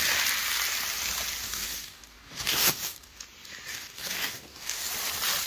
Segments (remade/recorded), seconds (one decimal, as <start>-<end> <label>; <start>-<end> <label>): 0.0-1.4 recorded; 1.4-3.2 remade; 3.2-3.7 recorded; 3.7-4.9 remade; 4.9-5.5 recorded